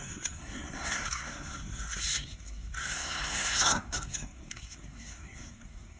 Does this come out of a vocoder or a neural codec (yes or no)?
yes